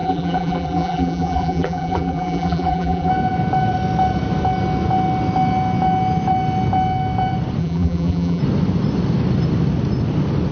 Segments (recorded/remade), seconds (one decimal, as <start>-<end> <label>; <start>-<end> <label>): 0.0-3.1 remade; 3.1-7.6 recorded; 7.6-8.4 remade; 8.4-10.5 recorded